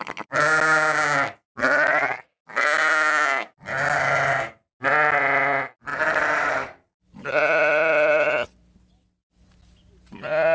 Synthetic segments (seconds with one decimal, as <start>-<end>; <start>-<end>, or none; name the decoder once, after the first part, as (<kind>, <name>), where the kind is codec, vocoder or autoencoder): 5.9-8.9 (vocoder, BigVGAN v2)

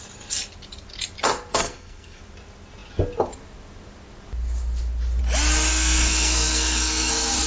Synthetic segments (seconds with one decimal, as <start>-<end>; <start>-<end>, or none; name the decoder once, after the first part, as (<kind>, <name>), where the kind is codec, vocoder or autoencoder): 1.5-2.2 (codec, SNAC); 5.7-7.1

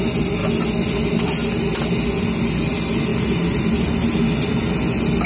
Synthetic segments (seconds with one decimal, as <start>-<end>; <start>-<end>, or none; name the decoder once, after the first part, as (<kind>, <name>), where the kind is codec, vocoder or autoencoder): none

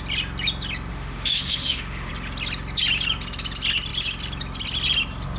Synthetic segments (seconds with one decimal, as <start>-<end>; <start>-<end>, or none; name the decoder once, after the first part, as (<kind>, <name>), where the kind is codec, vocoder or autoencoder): 0.9-2.1 (autoencoder, DAC-VAE)

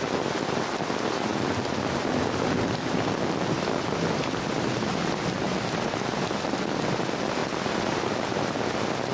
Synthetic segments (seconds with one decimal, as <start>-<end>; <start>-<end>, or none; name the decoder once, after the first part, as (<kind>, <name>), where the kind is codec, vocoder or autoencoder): none

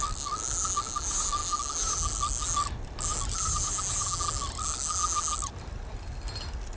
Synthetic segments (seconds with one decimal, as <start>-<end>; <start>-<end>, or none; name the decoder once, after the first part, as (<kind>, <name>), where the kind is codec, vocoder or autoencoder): none

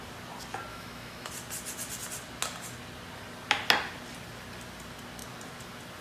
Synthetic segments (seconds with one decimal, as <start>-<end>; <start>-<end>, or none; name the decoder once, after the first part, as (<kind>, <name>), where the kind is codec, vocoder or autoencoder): 0.7-1.3 (autoencoder, DAC-VAE)